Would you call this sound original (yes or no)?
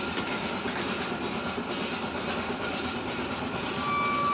yes